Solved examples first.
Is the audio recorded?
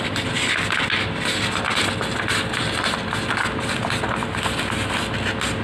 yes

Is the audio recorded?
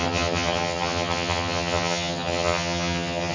no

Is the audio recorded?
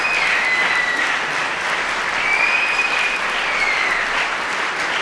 yes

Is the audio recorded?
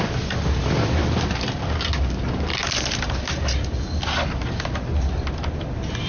yes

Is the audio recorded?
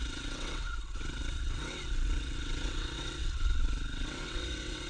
no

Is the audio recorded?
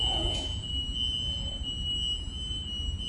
yes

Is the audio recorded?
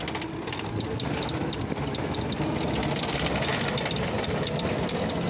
yes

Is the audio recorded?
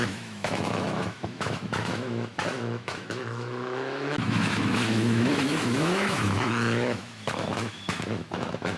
no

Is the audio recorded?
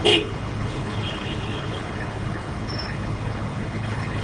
no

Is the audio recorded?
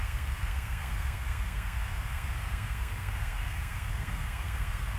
no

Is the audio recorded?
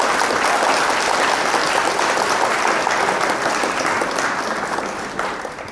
yes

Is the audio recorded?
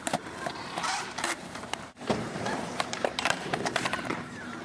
no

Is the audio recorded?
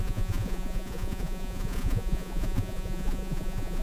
no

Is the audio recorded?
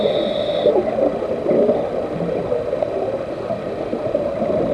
yes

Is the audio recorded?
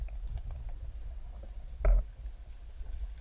yes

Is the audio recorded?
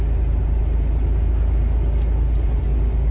yes